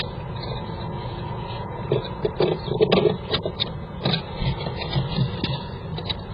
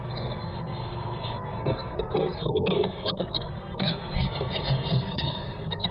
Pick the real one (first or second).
first